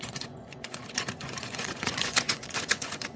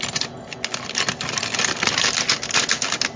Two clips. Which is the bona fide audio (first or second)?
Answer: second